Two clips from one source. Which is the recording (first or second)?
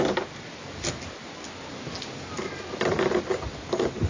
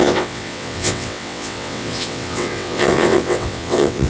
first